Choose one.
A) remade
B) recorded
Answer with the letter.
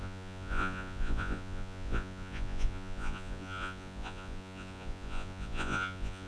A